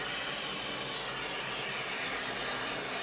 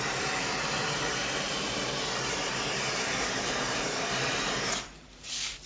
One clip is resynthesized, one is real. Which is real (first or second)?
first